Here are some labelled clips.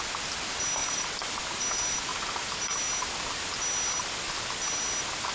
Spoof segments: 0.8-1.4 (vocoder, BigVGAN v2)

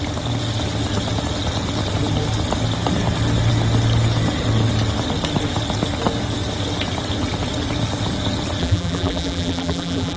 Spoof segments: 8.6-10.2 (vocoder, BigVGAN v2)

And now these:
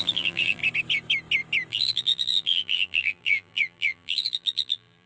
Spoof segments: 0.0-0.6 (vocoder, BigVGAN v2); 1.7-5.1

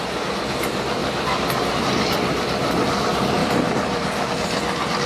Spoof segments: 3.4-4.3 (vocoder, BigVGAN v2)

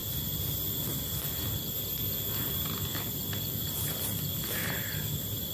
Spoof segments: none